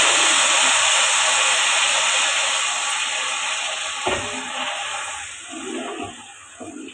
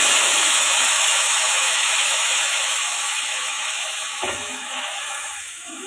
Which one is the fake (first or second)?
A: second